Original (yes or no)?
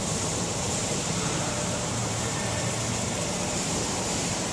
no